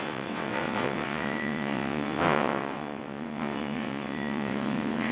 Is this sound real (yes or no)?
no